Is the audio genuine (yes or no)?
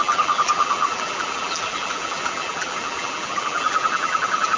no